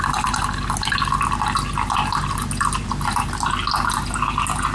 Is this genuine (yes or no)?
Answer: yes